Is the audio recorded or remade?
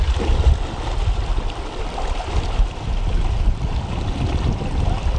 recorded